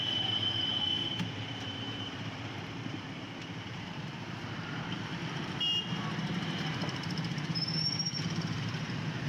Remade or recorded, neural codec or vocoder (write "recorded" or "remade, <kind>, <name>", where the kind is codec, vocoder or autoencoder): remade, vocoder, BigVGAN v2